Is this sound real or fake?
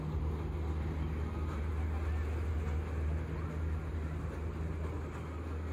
real